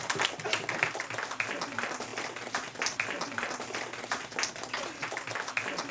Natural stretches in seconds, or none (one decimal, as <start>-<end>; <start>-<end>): 0.0-5.9